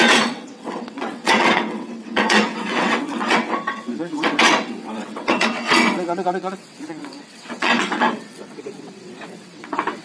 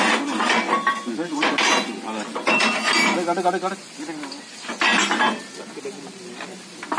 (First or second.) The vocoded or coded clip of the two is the first